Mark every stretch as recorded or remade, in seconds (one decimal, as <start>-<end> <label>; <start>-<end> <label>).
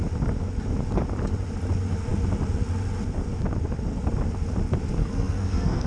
0.0-5.0 recorded; 5.0-5.9 remade